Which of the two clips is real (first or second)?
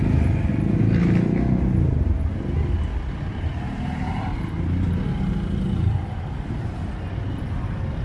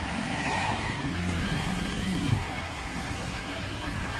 first